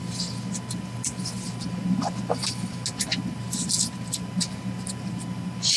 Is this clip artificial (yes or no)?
no